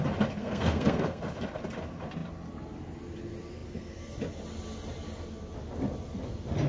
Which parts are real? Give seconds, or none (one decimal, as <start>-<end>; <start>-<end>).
0.0-0.4; 1.2-6.7